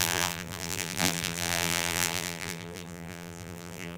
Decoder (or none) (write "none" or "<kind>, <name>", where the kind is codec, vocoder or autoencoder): vocoder, BigVGAN v2